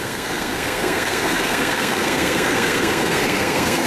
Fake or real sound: fake